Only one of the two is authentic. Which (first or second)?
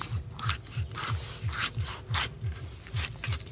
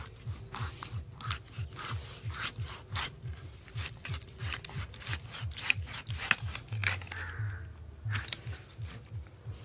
first